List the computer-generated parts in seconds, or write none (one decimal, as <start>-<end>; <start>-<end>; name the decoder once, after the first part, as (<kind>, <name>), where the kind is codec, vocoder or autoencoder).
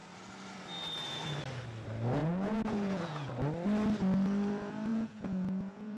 2.2-3.3 (vocoder, Vocos); 4.9-6.0